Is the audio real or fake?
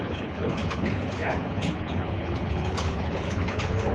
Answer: fake